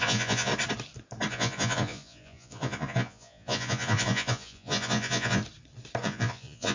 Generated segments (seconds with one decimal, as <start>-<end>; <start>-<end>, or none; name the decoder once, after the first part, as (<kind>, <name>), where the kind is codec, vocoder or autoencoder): 0.0-0.5 (vocoder, Vocos); 1.3-5.4; 6.0-6.7